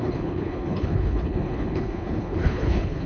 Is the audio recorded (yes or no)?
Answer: no